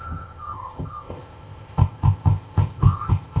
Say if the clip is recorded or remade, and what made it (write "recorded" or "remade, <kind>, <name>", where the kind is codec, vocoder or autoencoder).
remade, codec, ZipCodec